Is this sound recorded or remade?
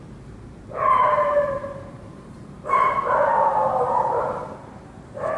remade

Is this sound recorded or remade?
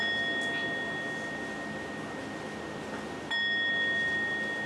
recorded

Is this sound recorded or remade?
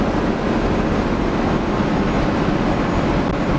recorded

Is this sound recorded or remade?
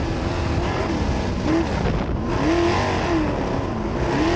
recorded